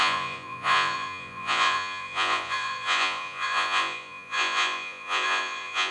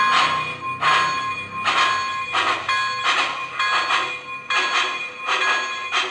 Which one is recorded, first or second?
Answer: second